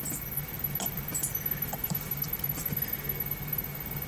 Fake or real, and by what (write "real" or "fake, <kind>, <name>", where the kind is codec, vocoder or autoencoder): real